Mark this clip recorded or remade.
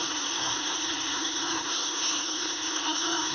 remade